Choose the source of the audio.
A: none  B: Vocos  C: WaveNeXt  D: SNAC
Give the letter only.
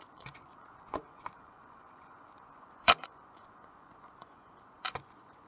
B